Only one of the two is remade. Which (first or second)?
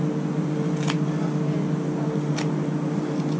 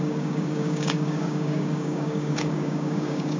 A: second